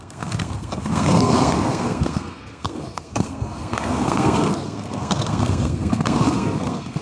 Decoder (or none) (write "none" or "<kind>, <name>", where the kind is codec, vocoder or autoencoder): codec, SNAC